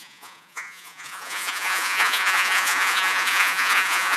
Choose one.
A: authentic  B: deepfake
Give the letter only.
B